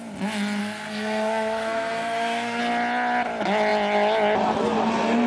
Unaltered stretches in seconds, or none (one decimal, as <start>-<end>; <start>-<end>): 0.0-0.6; 2.6-5.3